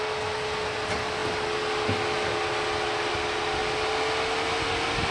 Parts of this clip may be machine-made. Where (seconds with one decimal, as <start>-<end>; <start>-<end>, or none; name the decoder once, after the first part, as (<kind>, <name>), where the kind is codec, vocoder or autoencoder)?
none